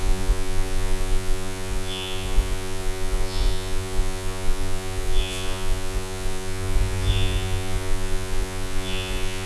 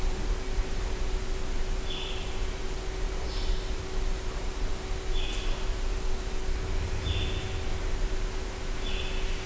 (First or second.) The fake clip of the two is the first